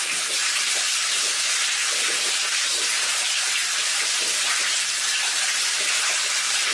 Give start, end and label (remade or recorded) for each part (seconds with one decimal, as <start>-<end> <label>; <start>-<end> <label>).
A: 0.0-6.7 remade